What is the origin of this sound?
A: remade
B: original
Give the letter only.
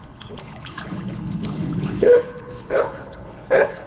A